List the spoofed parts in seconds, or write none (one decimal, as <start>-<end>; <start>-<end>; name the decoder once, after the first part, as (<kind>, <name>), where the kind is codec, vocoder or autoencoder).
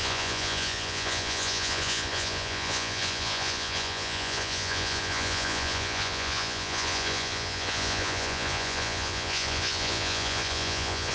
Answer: 0.0-11.1 (vocoder, Vocos)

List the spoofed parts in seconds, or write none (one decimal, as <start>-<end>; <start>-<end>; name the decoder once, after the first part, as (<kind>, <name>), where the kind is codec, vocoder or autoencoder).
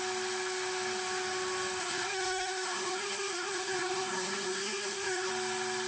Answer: 1.8-5.3 (codec, SNAC)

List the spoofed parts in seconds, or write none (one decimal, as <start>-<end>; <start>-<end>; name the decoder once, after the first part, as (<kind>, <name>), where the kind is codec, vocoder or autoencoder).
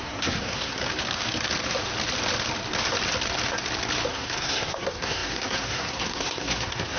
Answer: 0.0-0.8 (codec, SNAC); 4.1-7.0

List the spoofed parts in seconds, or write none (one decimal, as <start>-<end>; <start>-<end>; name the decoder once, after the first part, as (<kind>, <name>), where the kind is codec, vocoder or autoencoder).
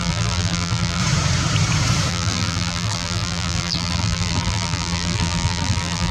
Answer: 0.0-1.0 (vocoder, BigVGAN v2); 2.1-6.1